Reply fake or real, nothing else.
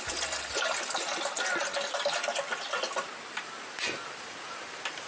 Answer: real